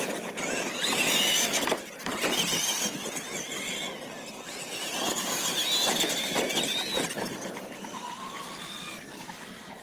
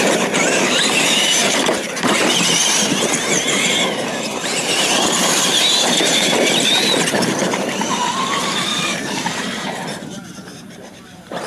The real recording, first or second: first